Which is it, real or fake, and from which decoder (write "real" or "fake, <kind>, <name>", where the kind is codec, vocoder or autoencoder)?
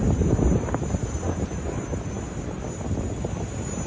real